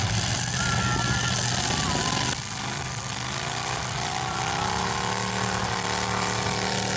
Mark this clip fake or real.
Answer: real